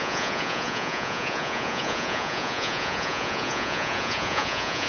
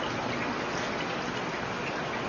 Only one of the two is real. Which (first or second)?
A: second